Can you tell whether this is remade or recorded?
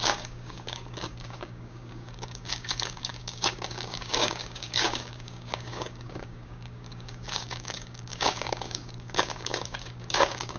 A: remade